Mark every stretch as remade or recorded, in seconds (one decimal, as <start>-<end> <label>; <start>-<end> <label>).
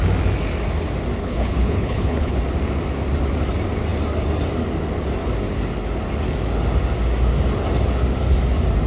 0.0-1.2 recorded; 1.2-2.4 remade; 2.4-8.9 recorded